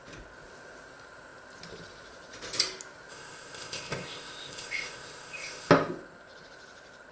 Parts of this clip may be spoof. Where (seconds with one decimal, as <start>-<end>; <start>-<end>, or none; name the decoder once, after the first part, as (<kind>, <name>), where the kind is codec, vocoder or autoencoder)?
3.1-5.7 (codec, ZipCodec)